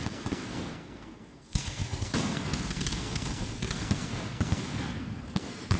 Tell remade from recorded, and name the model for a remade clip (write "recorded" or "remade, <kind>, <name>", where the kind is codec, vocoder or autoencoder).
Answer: remade, codec, SNAC